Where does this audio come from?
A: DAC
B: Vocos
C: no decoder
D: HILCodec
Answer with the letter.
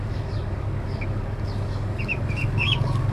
A